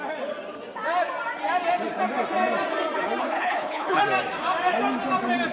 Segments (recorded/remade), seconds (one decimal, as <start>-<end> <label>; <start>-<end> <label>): 0.0-3.2 recorded; 3.2-4.0 remade; 4.0-5.5 recorded